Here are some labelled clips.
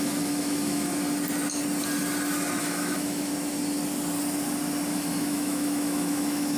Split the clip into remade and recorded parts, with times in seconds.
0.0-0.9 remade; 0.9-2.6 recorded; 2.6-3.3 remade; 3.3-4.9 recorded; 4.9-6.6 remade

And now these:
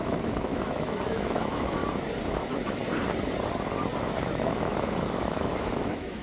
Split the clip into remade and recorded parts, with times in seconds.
0.0-1.8 remade; 1.8-2.3 recorded; 2.3-2.8 remade; 2.8-4.2 recorded; 4.2-6.2 remade

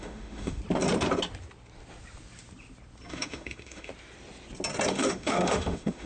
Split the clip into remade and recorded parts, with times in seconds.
0.0-0.6 remade; 0.6-3.1 recorded; 3.1-3.9 remade; 3.9-4.9 recorded; 4.9-6.1 remade

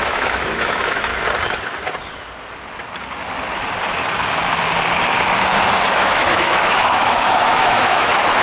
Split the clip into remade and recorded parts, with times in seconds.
0.0-1.1 remade; 1.1-5.9 recorded; 5.9-8.4 remade

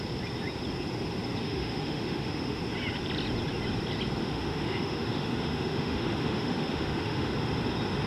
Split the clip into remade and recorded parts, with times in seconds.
0.0-1.4 recorded; 1.4-2.6 remade; 2.6-4.2 recorded; 4.2-7.3 remade; 7.3-8.1 recorded